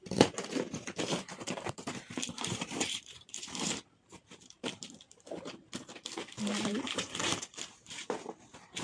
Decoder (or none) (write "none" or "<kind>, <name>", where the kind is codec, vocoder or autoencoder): vocoder, BigVGAN v2